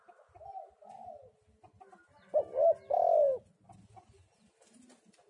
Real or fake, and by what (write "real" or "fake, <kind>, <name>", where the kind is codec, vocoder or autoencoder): real